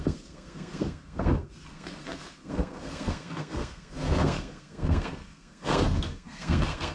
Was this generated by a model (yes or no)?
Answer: yes